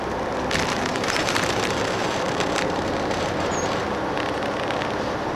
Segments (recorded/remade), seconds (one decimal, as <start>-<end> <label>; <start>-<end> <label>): 0.0-0.9 recorded; 0.9-3.8 remade; 3.8-5.4 recorded